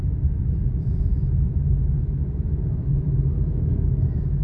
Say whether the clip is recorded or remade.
remade